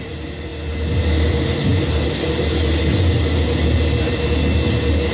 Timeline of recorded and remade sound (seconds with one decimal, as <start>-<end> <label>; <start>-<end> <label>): 0.0-0.5 remade; 0.5-1.2 recorded; 1.2-1.7 remade; 1.7-5.1 recorded